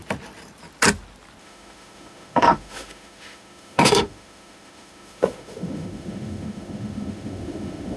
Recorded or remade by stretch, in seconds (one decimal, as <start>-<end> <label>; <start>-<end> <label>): 0.0-1.4 recorded; 1.4-8.0 remade